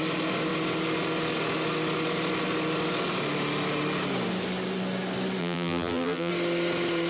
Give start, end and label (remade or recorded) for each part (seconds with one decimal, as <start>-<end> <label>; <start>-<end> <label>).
0.0-5.4 recorded; 5.4-6.3 remade; 6.3-7.1 recorded